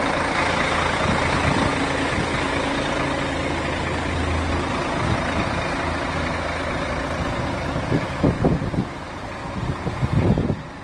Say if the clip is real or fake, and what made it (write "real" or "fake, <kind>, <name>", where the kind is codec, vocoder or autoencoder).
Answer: real